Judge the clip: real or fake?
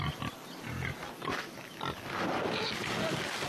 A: real